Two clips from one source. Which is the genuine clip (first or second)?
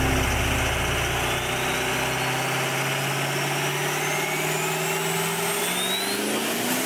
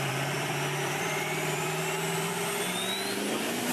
first